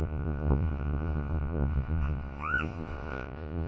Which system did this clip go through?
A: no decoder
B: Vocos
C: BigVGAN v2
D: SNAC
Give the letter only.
B